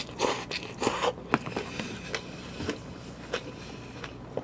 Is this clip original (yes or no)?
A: yes